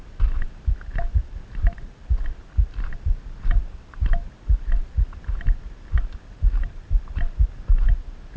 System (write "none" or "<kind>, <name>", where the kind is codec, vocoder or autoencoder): none